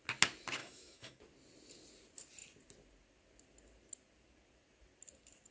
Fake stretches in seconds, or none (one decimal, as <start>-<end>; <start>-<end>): 0.6-1.2